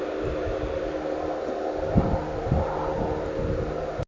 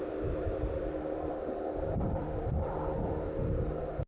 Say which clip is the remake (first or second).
second